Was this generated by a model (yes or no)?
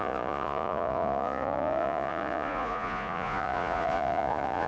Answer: yes